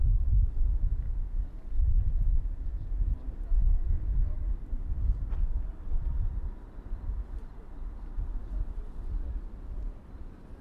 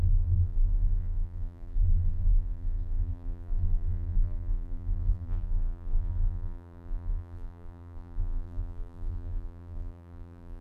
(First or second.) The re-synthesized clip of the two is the second